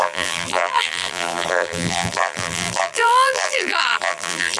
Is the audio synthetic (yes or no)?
yes